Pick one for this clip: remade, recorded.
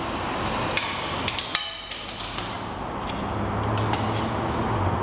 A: recorded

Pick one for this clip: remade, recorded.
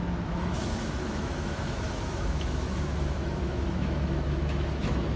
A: remade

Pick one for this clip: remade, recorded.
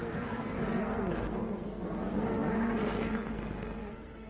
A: remade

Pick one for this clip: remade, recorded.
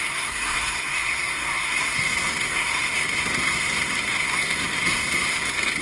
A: remade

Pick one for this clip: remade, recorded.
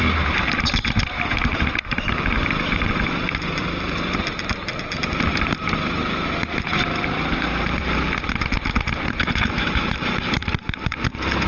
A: remade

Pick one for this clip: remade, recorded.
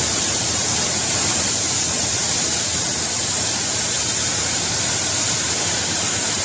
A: remade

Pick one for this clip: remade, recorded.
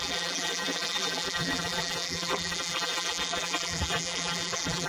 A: remade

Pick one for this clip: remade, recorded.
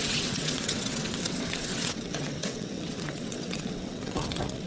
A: remade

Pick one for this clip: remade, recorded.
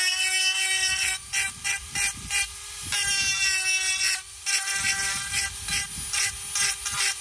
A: recorded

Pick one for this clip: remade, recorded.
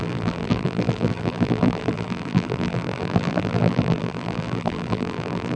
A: remade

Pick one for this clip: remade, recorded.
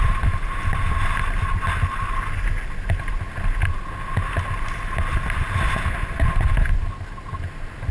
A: recorded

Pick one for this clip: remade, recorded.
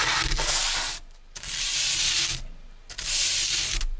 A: recorded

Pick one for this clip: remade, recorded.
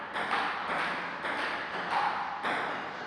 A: recorded